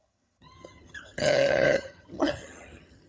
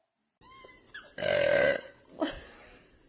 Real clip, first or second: second